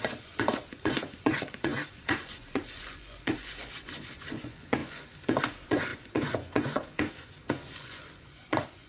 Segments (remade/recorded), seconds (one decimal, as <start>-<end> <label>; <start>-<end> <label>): 0.0-8.9 remade